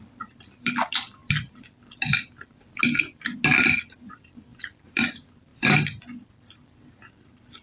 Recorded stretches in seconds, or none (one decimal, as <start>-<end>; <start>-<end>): 1.2-3.6